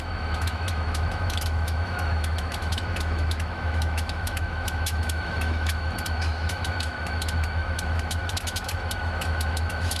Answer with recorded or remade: remade